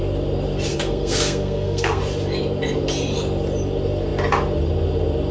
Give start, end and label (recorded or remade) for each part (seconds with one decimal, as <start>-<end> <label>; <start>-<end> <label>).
0.0-0.7 recorded; 0.7-2.0 remade; 2.0-5.3 recorded